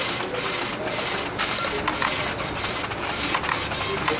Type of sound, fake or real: real